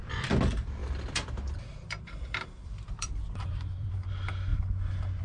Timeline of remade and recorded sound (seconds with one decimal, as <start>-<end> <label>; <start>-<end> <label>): 0.0-0.8 recorded; 0.8-3.9 remade; 3.9-5.2 recorded